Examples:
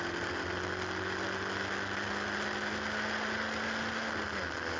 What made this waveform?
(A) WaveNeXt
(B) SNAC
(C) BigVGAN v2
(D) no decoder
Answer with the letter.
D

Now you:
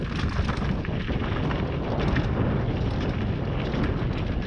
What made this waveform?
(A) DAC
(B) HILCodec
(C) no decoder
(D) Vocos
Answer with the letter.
C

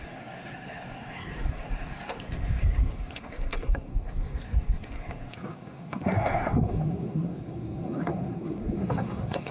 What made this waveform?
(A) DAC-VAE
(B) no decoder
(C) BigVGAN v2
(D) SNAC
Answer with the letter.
D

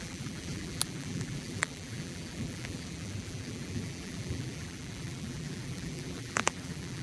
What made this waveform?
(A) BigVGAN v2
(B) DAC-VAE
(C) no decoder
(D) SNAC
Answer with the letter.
A